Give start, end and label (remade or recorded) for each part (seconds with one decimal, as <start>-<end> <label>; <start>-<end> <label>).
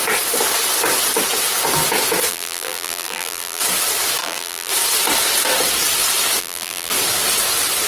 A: 0.0-2.3 recorded; 2.3-3.6 remade; 3.6-4.2 recorded; 4.2-4.7 remade; 4.7-6.4 recorded; 6.4-6.9 remade; 6.9-7.9 recorded